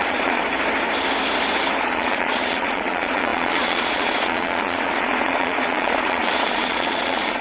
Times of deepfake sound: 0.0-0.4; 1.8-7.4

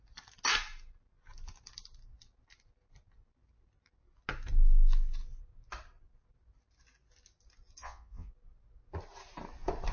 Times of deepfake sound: 7.8-8.3

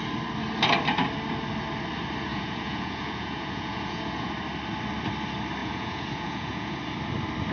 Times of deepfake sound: 2.3-4.3; 5.6-6.8